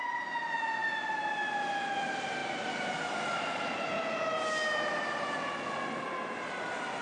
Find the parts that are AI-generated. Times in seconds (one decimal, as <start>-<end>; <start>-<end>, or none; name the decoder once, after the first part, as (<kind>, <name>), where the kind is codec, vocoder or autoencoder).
none